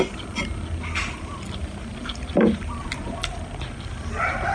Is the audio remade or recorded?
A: recorded